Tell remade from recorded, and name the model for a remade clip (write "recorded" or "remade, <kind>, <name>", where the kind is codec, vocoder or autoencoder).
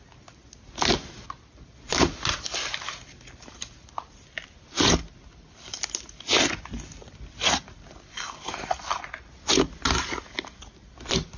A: recorded